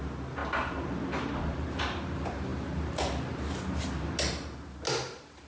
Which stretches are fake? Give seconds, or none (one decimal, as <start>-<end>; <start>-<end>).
none